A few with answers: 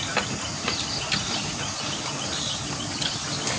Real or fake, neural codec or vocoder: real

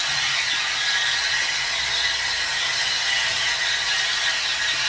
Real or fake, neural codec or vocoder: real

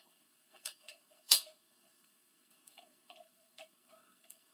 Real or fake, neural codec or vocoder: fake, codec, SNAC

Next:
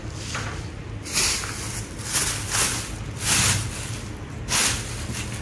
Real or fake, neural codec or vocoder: real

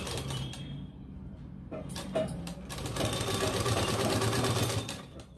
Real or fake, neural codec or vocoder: fake, vocoder, BigVGAN v2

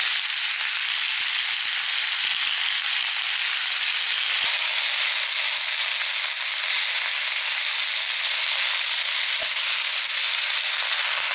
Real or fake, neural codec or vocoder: real